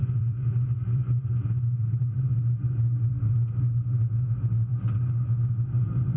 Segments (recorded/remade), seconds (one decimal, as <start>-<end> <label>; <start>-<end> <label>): 0.0-1.6 remade; 1.6-4.7 recorded; 4.7-5.5 remade; 5.5-6.2 recorded